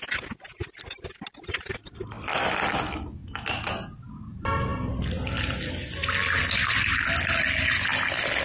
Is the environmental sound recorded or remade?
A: recorded